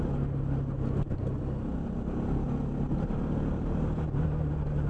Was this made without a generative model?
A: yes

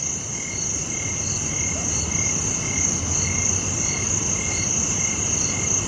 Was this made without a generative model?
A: yes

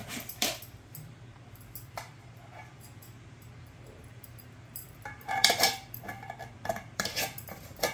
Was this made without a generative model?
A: no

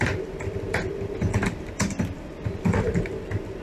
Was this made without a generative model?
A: no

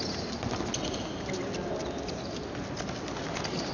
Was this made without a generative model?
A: yes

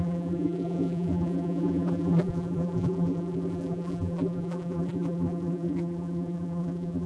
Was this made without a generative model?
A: no